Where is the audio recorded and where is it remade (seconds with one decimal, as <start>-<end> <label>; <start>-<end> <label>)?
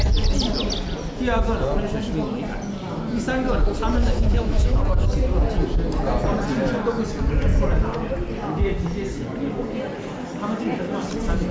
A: 0.0-4.0 recorded; 4.0-4.8 remade; 4.8-11.5 recorded